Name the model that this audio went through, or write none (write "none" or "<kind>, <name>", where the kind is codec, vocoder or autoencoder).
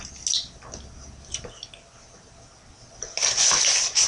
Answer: none